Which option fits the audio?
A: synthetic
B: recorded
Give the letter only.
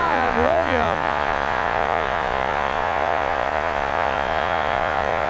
A